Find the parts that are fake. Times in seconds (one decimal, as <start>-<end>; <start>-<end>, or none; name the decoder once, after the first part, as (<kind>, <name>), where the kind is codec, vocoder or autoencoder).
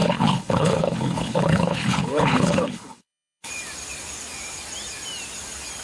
0.0-3.5 (codec, HILCodec)